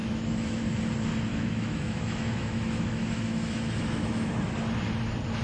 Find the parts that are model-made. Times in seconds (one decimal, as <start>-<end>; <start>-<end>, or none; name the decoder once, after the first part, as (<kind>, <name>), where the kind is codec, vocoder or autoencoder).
0.0-0.6 (autoencoder, DAC-VAE); 1.3-4.5